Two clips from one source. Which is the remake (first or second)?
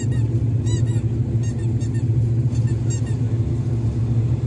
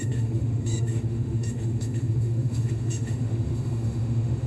second